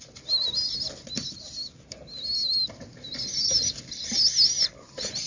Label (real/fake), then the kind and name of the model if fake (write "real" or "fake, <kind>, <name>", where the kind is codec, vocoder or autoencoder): real